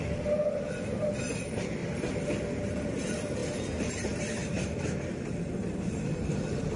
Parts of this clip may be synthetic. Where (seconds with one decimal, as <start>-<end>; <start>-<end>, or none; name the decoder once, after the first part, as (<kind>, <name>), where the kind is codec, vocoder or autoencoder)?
0.0-1.8 (vocoder, BigVGAN v2); 2.7-3.4; 3.9-6.8